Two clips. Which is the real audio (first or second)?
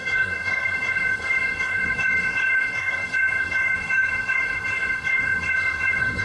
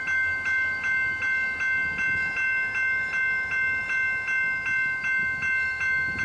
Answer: second